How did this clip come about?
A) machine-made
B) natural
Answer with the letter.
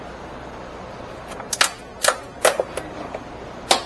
B